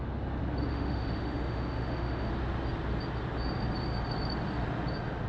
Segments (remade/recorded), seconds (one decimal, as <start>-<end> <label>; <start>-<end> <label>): 0.0-0.7 recorded; 0.7-2.3 remade; 2.3-5.3 recorded